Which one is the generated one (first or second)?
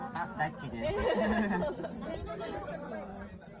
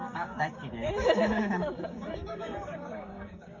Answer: second